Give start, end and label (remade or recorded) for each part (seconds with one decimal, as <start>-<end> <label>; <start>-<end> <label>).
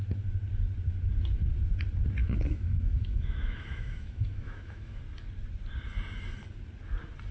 0.0-2.2 recorded; 2.2-5.0 remade; 5.0-7.3 recorded